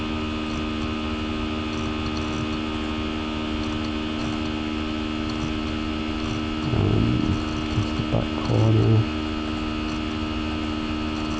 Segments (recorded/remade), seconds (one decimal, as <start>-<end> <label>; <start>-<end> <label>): 0.0-11.4 recorded